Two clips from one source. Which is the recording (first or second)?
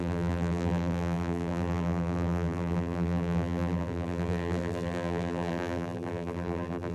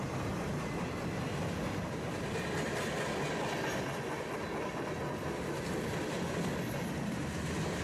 second